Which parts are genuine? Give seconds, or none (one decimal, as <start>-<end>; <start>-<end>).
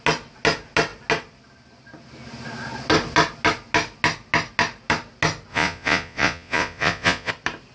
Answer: 0.0-5.5; 7.3-7.7